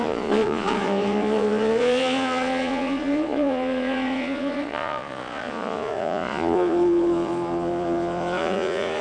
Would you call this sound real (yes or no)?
no